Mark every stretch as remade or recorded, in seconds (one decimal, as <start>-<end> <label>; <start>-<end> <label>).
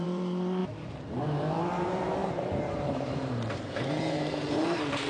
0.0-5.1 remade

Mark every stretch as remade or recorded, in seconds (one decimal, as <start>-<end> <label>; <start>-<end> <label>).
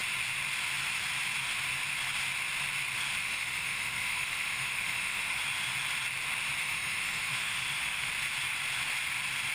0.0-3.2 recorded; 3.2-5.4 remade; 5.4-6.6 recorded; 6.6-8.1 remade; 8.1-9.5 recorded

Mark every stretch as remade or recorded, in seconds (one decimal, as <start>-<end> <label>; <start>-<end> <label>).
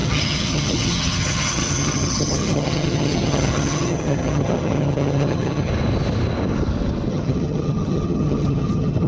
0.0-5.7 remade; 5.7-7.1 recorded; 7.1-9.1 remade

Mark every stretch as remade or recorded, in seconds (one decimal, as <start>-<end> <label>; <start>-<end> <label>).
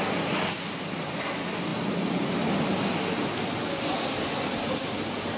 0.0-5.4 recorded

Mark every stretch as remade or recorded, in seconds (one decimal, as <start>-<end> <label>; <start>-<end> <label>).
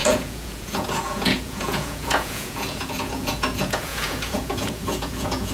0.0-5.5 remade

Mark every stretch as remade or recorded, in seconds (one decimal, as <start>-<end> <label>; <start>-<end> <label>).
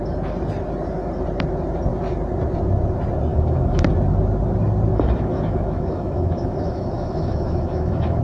0.0-3.3 recorded; 3.3-3.8 remade; 3.8-4.9 recorded; 4.9-8.2 remade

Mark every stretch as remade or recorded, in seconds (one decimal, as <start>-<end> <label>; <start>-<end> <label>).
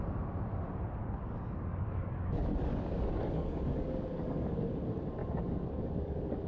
0.0-1.0 recorded; 1.0-4.6 remade; 4.6-5.2 recorded; 5.2-6.5 remade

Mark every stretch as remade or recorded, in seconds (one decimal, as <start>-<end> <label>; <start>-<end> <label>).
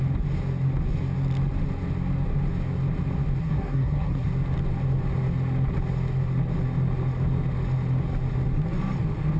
0.0-3.4 recorded; 3.4-4.3 remade; 4.3-9.4 recorded